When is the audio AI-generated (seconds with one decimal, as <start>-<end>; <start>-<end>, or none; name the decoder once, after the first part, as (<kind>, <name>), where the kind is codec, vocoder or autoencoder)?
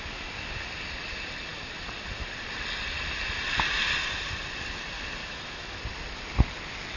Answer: 5.2-5.8 (autoencoder, DAC-VAE)